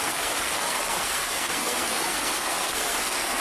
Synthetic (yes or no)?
yes